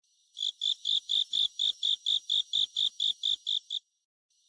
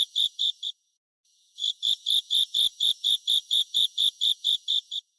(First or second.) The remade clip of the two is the second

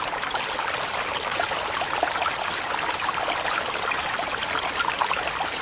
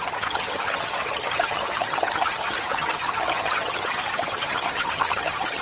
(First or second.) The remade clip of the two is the second